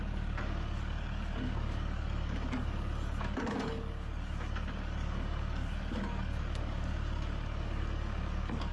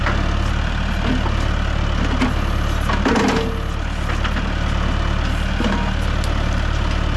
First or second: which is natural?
second